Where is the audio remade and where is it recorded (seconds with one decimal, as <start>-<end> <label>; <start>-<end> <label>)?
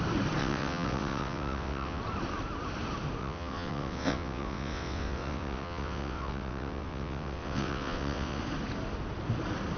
0.0-0.4 recorded; 0.4-2.0 remade; 2.0-3.2 recorded; 3.2-8.4 remade; 8.4-9.8 recorded